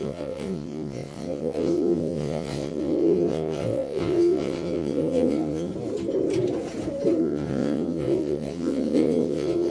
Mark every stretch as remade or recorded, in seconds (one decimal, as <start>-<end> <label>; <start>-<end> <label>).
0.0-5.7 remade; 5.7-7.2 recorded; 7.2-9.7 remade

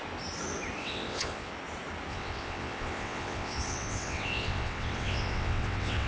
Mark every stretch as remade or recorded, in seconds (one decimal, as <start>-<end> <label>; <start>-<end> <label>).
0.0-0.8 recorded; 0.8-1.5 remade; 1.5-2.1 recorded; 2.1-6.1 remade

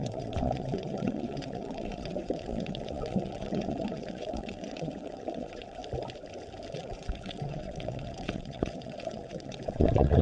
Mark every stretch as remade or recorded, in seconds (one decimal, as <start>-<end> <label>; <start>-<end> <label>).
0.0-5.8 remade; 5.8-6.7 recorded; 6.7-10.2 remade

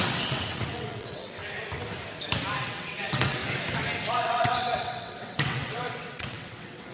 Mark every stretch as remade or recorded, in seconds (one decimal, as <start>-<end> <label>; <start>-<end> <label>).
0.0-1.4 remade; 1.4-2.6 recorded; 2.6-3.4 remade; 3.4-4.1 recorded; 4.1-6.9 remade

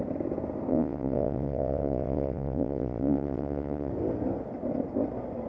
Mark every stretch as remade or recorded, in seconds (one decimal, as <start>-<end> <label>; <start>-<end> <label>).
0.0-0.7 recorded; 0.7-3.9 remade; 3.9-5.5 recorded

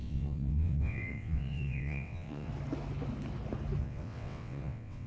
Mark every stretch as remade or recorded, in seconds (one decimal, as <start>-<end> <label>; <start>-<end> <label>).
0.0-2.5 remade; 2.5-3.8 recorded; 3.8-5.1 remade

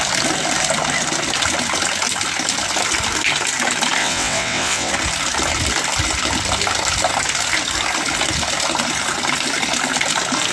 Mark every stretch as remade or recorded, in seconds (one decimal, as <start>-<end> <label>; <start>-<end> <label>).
0.0-4.0 recorded; 4.0-4.9 remade; 4.9-10.5 recorded